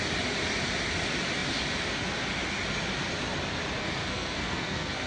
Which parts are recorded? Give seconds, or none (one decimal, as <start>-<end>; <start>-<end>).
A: 0.0-3.8